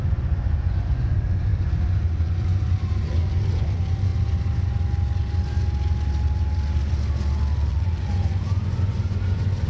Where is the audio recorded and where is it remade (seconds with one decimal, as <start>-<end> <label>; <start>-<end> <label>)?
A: 0.0-4.1 remade; 4.1-7.7 recorded; 7.7-9.7 remade